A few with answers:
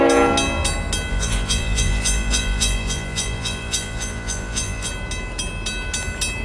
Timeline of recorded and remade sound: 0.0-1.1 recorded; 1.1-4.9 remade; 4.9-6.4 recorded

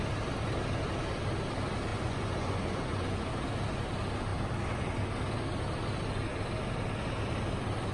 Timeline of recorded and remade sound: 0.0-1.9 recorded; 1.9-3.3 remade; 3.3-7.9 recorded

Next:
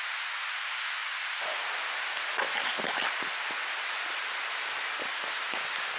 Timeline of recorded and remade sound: 0.0-6.0 recorded